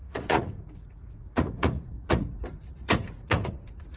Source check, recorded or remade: remade